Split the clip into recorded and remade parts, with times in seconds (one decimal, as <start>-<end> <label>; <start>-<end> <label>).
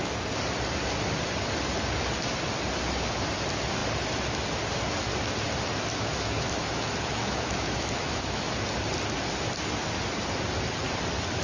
0.0-6.1 recorded; 6.1-8.5 remade; 8.5-11.4 recorded